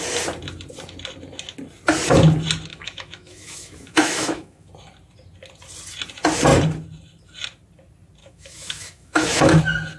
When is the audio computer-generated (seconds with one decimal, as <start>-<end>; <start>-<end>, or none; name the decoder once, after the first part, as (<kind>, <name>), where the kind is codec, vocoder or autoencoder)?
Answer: 2.7-4.7 (autoencoder, DAC-VAE); 8.2-9.6